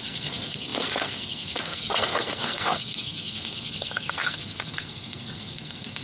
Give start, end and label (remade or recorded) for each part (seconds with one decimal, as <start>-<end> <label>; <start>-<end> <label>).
0.0-6.0 remade